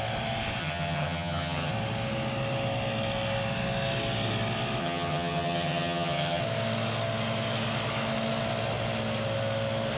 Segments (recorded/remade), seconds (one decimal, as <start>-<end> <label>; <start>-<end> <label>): 0.0-0.6 recorded; 0.6-1.7 remade; 1.7-4.8 recorded; 4.8-6.4 remade; 6.4-10.0 recorded